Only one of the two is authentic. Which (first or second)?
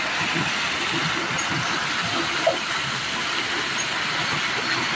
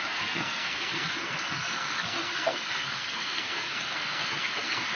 first